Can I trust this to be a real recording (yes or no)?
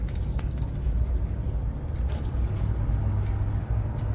yes